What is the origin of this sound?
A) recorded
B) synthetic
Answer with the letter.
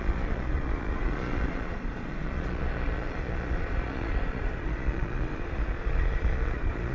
B